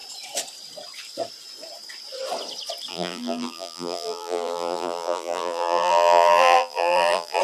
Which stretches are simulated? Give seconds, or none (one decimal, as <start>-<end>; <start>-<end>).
2.9-7.4